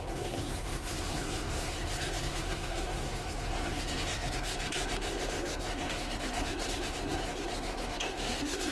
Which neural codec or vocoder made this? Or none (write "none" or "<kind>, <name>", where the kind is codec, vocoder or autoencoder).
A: codec, SNAC